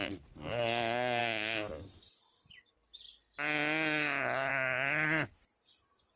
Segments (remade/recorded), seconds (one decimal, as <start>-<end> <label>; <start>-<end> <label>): 0.0-6.2 recorded